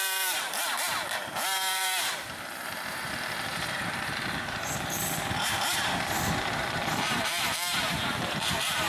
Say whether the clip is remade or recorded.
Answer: remade